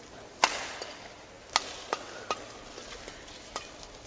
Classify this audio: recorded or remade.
recorded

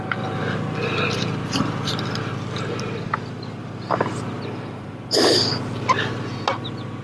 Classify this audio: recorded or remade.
recorded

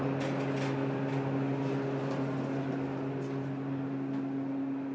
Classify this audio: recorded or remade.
recorded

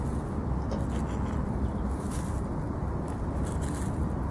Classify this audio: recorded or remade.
recorded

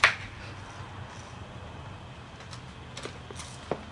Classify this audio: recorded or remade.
recorded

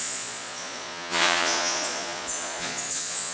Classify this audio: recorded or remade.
remade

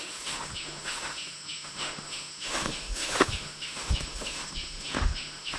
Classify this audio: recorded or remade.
remade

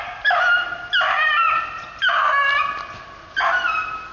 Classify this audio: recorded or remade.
recorded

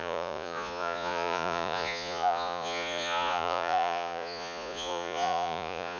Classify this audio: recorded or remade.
remade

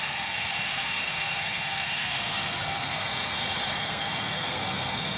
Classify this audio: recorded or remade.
remade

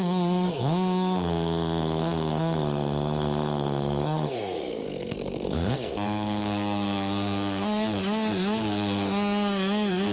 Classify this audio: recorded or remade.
remade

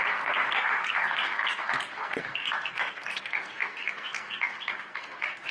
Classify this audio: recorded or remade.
remade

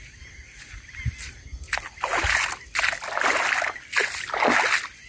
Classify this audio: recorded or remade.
recorded